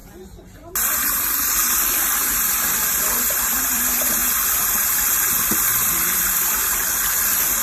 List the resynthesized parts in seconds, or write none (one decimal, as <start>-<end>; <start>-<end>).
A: 2.0-4.2; 5.5-6.6

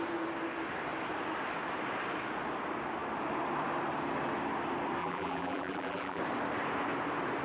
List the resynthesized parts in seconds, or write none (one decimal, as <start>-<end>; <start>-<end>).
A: 5.0-6.2

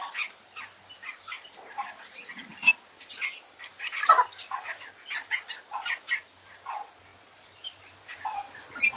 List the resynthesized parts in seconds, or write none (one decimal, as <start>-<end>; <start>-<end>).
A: none

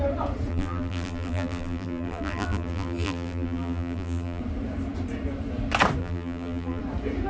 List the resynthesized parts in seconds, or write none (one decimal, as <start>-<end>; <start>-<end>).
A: 0.5-4.4; 6.0-6.8

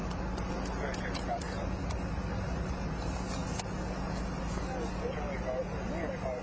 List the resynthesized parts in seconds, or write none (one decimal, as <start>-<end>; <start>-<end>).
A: none

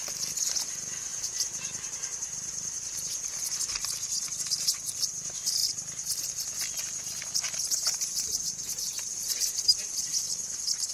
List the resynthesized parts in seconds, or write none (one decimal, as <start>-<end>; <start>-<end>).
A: 1.1-3.4; 7.8-9.3